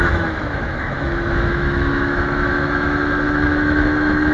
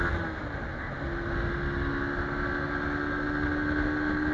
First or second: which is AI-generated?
first